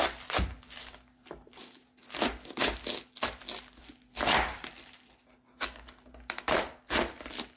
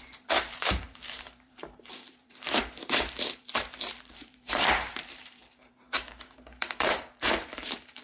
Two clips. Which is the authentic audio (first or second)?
first